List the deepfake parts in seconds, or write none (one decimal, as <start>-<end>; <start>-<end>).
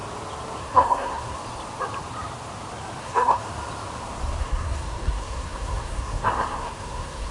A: 0.6-1.4; 3.0-3.4; 4.4-7.3